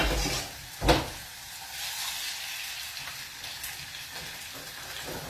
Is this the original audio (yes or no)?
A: yes